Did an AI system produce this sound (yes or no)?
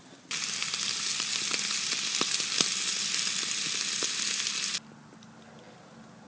no